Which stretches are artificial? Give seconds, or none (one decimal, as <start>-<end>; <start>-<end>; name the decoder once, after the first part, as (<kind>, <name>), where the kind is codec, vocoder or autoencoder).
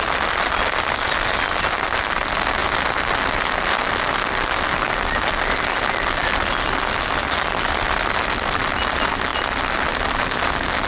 none